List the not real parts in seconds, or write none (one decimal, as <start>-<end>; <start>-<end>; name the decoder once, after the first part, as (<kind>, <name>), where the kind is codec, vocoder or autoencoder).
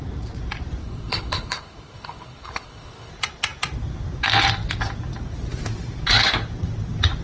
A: 0.8-3.1 (codec, HILCodec)